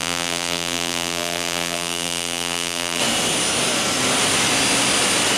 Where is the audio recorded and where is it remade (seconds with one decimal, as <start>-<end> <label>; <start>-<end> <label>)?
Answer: 0.0-3.0 remade; 3.0-5.4 recorded